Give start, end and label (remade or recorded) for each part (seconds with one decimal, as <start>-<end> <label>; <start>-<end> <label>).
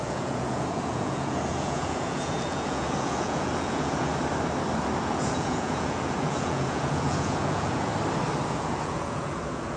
0.0-4.1 remade; 4.1-5.0 recorded; 5.0-7.9 remade; 7.9-8.5 recorded; 8.5-9.8 remade